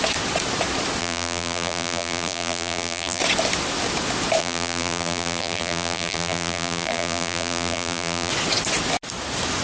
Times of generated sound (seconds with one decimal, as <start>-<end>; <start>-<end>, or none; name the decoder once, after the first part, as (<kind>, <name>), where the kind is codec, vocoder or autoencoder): 1.0-3.2 (vocoder, BigVGAN v2); 4.4-8.3